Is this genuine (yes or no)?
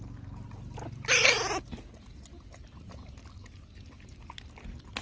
yes